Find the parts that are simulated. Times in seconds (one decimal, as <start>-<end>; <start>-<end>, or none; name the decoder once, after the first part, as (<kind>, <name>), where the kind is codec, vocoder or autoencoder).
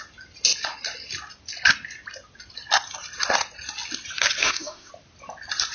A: 4.4-4.9 (autoencoder, DAC-VAE)